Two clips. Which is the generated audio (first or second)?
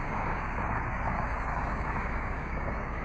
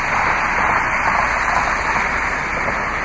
first